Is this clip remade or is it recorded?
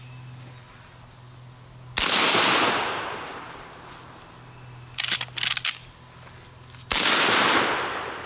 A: recorded